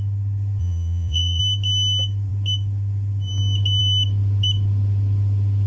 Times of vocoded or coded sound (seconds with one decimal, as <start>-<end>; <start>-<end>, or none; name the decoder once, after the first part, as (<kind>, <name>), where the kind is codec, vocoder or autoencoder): 0.6-1.4 (vocoder, Vocos)